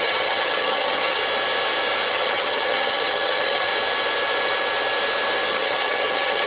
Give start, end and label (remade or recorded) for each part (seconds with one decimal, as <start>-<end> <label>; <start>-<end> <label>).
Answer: 0.0-1.2 remade; 1.2-2.1 recorded; 2.1-3.7 remade; 3.7-5.5 recorded; 5.5-6.5 remade